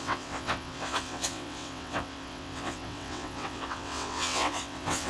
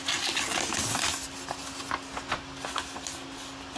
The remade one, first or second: first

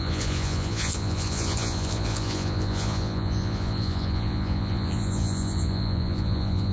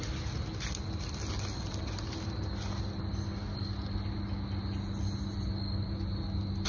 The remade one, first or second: first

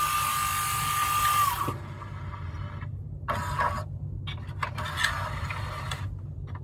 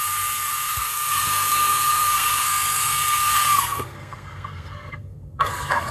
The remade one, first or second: second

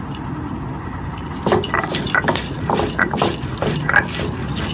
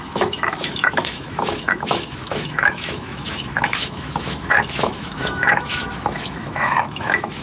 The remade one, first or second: second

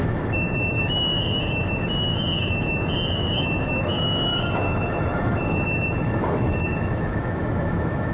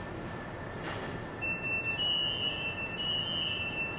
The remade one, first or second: first